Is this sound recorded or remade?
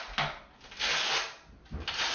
recorded